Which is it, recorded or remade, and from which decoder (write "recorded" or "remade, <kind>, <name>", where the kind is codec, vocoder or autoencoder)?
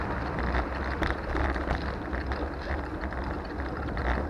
recorded